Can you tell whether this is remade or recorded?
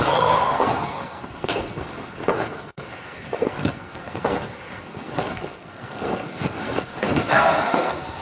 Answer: remade